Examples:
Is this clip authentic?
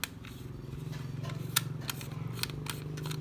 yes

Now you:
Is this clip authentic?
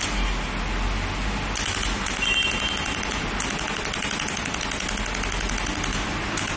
yes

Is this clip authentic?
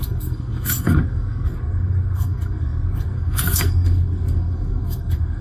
no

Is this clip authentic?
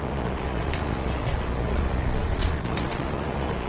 no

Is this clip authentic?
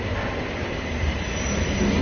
yes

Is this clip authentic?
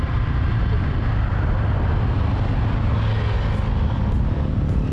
yes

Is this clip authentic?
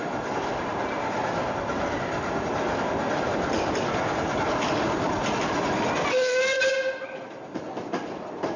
yes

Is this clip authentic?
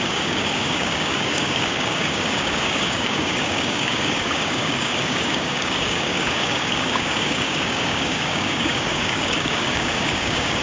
no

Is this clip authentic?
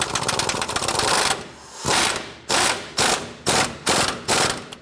yes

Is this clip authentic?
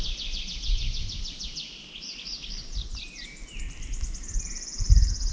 yes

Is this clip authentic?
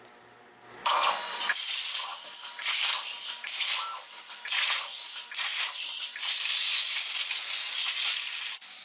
yes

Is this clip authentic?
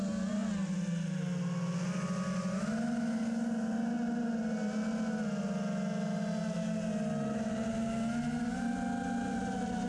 yes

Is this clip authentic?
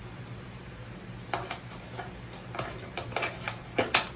yes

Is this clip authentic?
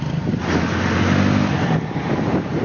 yes